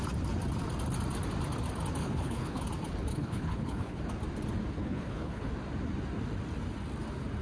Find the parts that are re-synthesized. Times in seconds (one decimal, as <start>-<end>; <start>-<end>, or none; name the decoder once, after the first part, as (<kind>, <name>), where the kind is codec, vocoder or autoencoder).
2.0-2.6 (codec, HILCodec); 3.1-4.0; 4.8-5.5